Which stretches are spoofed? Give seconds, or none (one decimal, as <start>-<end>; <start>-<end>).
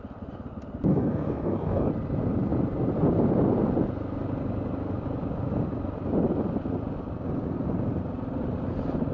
0.9-1.9